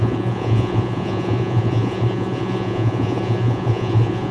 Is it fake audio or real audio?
fake